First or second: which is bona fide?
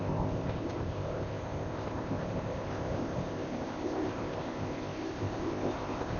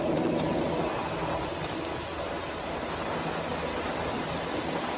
second